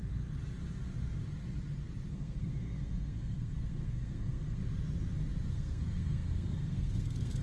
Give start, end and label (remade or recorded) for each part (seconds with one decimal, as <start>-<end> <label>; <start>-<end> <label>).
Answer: 0.0-2.1 recorded; 2.1-4.6 remade; 4.6-5.5 recorded; 5.5-7.4 remade